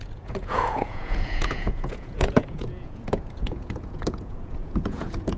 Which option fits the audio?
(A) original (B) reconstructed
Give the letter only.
B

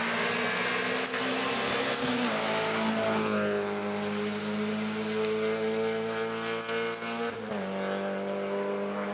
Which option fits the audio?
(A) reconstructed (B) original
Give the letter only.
B